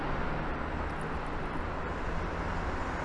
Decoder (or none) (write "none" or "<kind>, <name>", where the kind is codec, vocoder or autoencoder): none